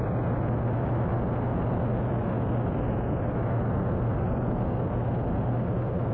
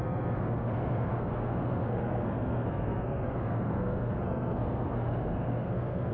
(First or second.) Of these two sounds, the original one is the first